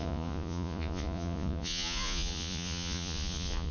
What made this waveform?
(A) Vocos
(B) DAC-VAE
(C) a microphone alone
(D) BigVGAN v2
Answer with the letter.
A